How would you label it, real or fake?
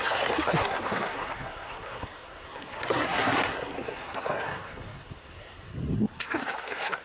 fake